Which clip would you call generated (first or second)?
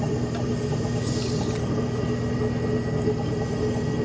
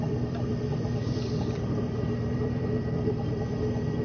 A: second